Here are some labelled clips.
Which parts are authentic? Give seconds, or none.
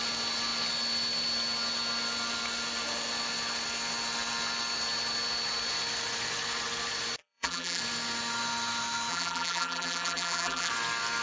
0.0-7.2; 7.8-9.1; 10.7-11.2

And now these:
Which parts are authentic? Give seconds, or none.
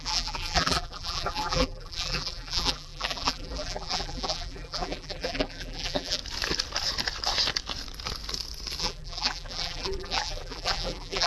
6.2-8.8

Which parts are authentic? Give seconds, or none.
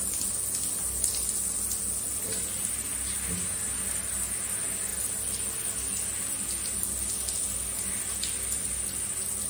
0.0-9.5